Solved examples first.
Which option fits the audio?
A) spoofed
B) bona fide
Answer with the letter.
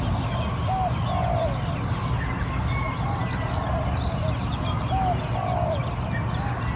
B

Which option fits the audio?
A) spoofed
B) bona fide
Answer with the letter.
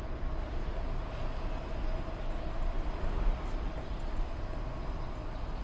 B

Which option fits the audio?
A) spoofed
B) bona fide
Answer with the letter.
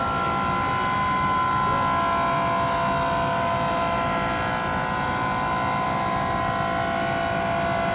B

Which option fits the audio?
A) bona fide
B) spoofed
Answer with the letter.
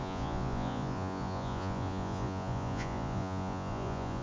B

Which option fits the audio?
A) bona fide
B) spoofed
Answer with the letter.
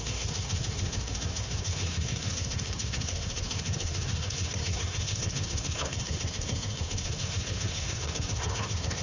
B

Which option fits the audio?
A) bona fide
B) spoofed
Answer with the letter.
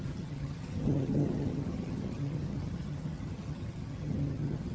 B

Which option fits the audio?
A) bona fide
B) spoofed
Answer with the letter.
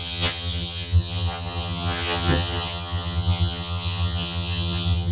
B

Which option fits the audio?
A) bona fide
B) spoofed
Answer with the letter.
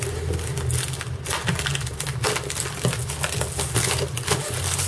A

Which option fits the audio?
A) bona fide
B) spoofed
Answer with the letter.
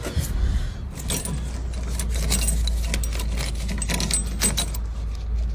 A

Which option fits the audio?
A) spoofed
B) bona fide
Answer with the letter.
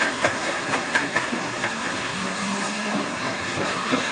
A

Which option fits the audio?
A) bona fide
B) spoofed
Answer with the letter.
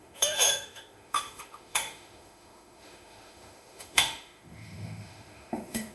B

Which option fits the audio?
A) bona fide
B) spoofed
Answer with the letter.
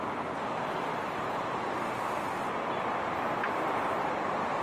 A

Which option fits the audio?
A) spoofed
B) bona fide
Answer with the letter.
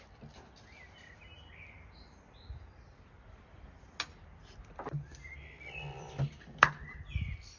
B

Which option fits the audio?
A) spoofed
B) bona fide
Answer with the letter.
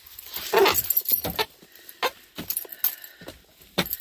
B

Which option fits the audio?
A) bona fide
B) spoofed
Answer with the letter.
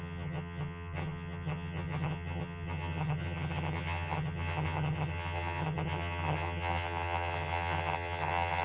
B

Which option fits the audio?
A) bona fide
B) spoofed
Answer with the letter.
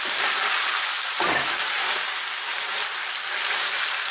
A